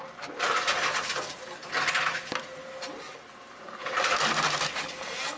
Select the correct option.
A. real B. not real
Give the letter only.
A